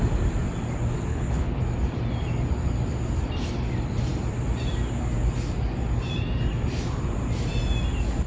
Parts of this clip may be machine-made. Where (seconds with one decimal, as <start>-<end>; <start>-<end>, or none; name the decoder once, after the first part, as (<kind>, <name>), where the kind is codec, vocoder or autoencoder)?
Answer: 1.1-1.6 (codec, HILCodec)